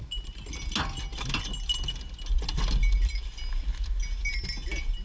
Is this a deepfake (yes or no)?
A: no